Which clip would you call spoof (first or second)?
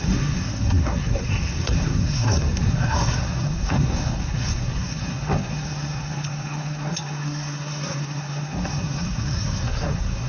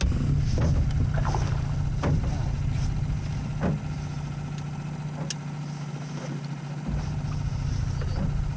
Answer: first